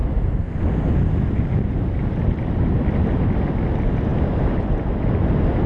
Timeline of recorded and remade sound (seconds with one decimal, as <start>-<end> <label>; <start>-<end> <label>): 0.0-5.7 recorded